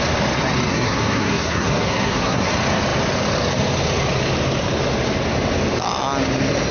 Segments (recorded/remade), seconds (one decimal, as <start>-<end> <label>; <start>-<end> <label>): 0.0-0.7 recorded; 0.7-2.5 remade; 2.5-6.7 recorded